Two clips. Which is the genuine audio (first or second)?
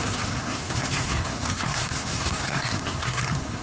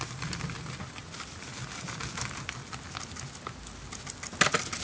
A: second